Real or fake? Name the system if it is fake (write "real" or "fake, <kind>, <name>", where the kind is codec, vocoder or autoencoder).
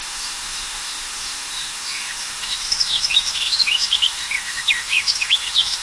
fake, autoencoder, DAC-VAE